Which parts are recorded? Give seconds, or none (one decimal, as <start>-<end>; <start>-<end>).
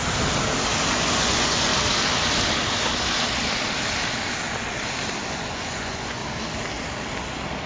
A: 0.0-0.9; 1.7-5.3; 6.2-7.7